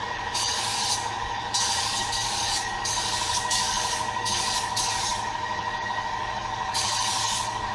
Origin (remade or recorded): remade